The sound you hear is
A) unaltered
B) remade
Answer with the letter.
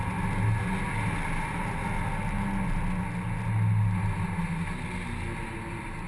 A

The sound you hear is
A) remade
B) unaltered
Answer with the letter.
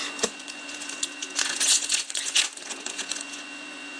A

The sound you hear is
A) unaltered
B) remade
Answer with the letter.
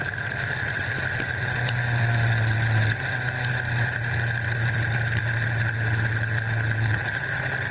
A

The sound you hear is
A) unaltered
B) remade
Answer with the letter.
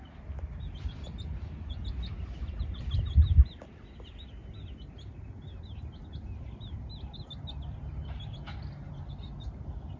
A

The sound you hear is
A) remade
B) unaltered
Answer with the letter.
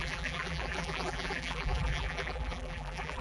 A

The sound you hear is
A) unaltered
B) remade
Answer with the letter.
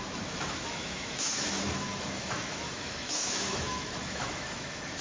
B